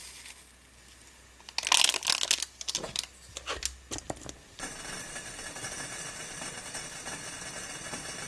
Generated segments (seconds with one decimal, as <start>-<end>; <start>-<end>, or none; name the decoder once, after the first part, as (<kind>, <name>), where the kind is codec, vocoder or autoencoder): none